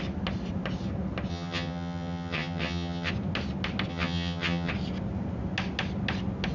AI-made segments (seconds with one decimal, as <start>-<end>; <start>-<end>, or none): 1.3-3.1; 3.9-4.7